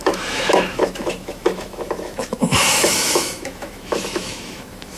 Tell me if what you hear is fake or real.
fake